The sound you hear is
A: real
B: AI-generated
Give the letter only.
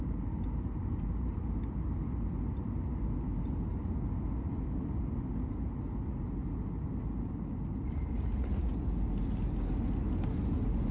A